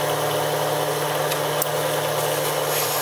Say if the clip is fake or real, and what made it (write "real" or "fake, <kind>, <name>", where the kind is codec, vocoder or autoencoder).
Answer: real